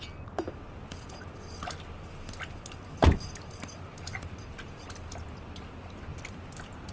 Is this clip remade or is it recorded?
recorded